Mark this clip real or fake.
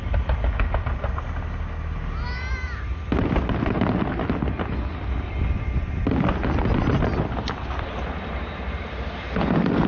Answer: real